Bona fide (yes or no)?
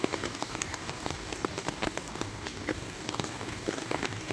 no